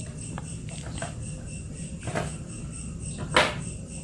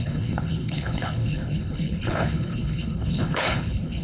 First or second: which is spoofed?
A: second